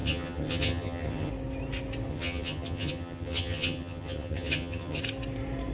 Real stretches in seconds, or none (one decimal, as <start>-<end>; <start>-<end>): 1.3-2.1; 5.0-5.7